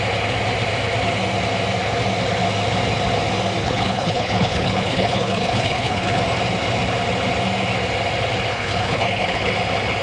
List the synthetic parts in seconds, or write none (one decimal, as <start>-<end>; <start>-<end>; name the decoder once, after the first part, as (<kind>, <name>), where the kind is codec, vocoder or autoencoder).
3.6-6.2 (codec, HILCodec); 8.5-9.5